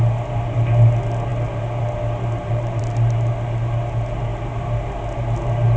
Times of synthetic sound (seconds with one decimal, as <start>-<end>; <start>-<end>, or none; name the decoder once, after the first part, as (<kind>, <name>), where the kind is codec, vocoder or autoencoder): none